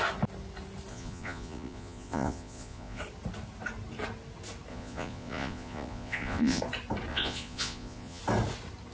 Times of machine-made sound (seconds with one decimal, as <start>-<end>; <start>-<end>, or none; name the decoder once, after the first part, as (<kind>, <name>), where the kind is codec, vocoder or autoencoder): 0.9-3.0 (vocoder, Vocos); 4.7-6.6; 7.1-8.2